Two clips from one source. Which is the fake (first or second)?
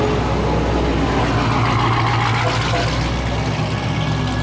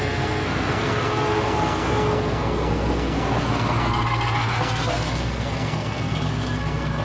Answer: second